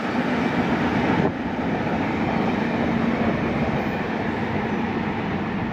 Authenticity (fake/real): real